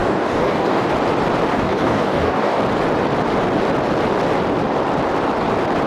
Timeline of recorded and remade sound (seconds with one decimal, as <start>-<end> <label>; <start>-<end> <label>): 0.0-0.9 remade; 0.9-1.5 recorded; 1.5-2.6 remade; 2.6-5.9 recorded